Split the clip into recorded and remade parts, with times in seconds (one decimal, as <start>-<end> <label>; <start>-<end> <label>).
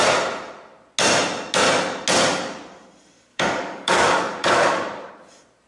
0.0-3.3 recorded; 3.3-5.1 remade; 5.1-5.7 recorded